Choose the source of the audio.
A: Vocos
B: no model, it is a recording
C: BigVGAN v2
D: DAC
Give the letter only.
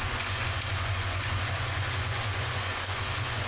A